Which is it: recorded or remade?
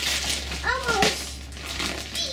recorded